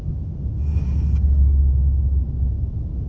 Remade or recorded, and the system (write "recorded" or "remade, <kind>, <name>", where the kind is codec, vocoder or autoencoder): recorded